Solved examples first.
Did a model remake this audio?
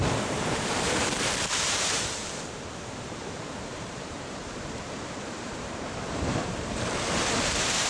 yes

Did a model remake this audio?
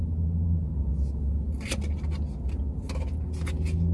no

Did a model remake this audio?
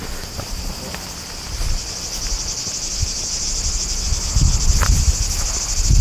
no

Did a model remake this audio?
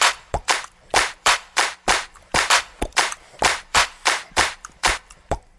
yes